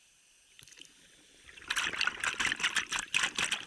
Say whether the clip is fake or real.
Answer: real